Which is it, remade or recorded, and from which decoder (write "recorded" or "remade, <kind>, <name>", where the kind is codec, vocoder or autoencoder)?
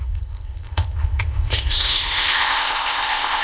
remade, codec, ZipCodec